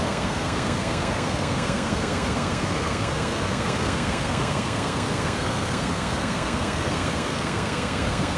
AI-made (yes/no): yes